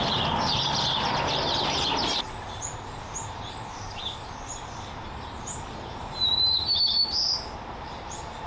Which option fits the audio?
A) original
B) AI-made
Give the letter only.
B